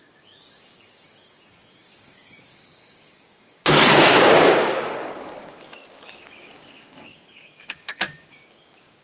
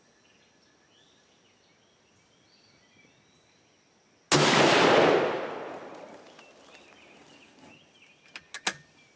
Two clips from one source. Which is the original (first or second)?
second